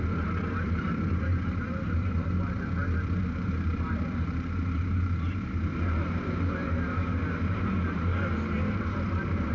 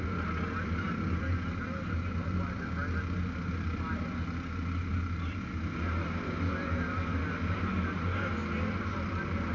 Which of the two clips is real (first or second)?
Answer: second